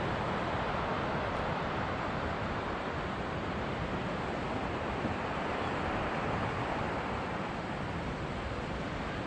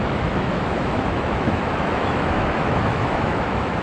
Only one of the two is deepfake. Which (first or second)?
second